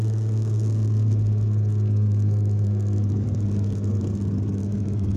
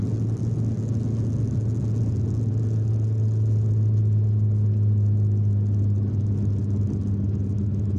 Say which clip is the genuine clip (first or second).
second